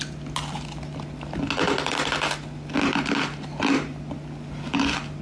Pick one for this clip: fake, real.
real